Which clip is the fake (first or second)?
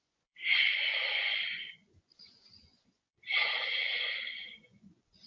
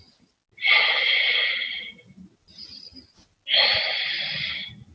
first